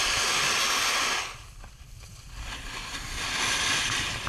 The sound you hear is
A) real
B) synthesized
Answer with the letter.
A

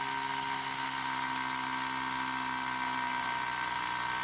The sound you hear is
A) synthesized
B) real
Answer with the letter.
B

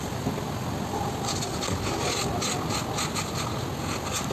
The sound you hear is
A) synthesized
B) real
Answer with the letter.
B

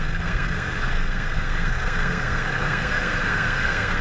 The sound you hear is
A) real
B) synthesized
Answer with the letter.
B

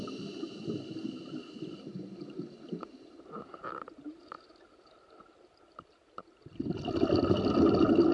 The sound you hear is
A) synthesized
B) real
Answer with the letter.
B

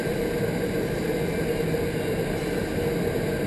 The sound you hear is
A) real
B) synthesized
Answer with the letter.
A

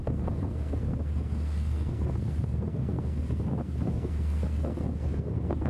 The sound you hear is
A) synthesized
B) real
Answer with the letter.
A